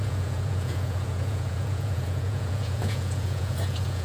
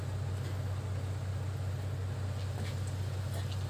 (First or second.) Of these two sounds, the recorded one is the second